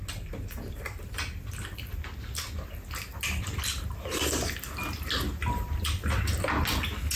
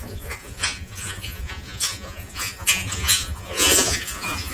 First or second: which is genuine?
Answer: first